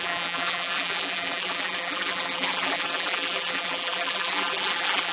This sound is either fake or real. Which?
fake